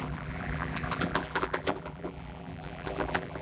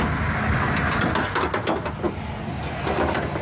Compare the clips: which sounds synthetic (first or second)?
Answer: first